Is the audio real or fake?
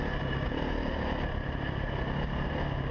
real